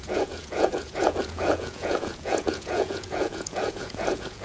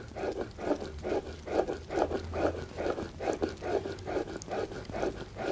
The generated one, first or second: first